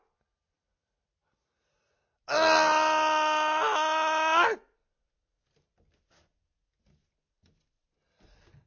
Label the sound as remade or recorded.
recorded